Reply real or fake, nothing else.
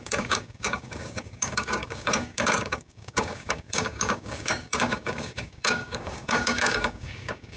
fake